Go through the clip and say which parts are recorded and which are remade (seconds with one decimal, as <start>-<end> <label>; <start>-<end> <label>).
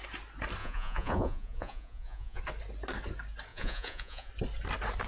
0.0-0.6 recorded; 0.6-2.4 remade; 2.4-3.5 recorded; 3.5-4.3 remade; 4.3-5.1 recorded